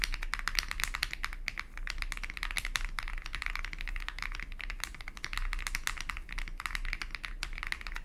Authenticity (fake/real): real